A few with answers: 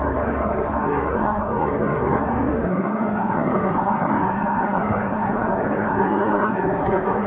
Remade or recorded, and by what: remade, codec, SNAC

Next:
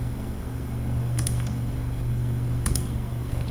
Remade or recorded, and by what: remade, codec, SNAC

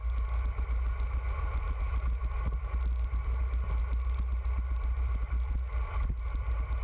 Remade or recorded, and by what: recorded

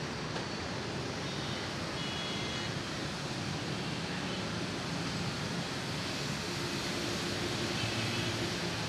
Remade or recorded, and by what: recorded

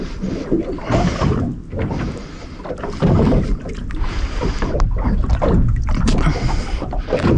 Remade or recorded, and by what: recorded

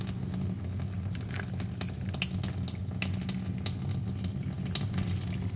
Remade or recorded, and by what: recorded